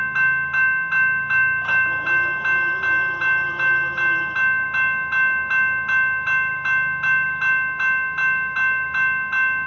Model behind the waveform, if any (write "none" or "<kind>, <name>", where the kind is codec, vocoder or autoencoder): none